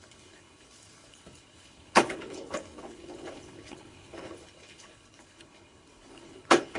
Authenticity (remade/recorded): remade